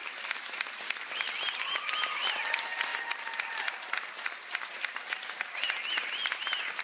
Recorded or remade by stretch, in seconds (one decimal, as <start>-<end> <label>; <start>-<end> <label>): 0.0-2.3 remade; 2.3-6.8 recorded